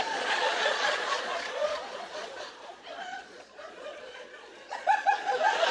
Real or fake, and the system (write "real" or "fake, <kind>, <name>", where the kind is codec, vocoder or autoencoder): fake, vocoder, Vocos